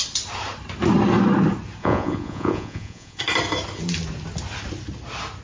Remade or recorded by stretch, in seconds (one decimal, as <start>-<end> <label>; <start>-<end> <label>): 0.0-1.8 recorded; 1.8-3.2 remade; 3.2-5.4 recorded